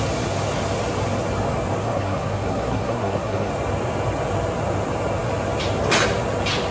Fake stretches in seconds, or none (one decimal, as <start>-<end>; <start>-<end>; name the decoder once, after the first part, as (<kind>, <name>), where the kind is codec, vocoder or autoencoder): 1.8-3.5 (codec, SNAC)